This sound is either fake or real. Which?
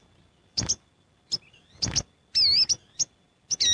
real